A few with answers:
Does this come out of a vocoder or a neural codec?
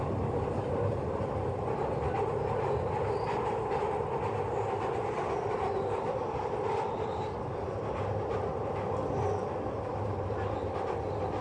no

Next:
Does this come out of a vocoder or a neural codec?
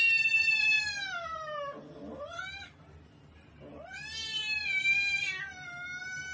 no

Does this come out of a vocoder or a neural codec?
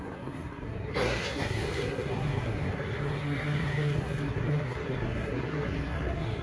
yes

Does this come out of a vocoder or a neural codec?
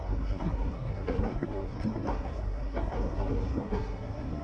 yes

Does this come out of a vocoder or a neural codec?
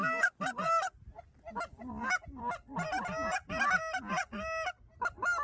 no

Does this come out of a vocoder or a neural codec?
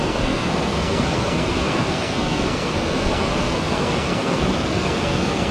yes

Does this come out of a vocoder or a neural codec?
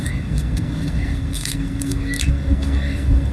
yes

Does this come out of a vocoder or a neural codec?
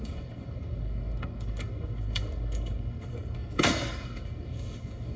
yes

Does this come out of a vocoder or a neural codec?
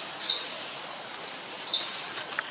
no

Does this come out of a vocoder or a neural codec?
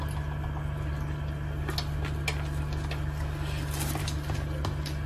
no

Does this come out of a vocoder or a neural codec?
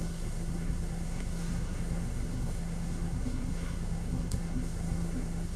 yes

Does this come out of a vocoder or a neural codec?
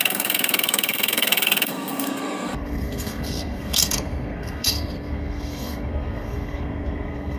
yes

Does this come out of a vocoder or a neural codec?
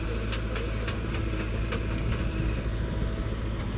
no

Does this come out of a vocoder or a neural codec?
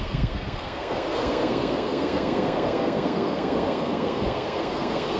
yes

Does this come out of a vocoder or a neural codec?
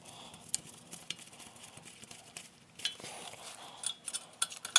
no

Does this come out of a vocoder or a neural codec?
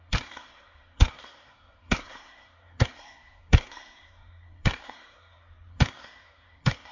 yes